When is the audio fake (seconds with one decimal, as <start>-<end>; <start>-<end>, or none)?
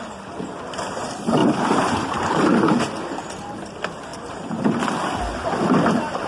1.4-2.8; 4.1-4.9